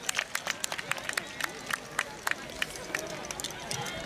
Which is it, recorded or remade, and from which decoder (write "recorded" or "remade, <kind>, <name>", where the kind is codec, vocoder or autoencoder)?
recorded